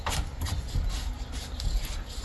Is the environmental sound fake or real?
real